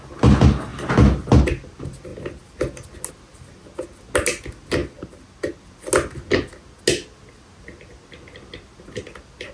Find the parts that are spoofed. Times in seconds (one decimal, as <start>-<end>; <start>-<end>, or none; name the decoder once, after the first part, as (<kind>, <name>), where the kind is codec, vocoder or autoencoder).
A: none